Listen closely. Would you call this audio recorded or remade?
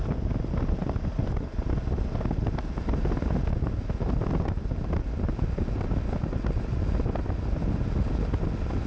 recorded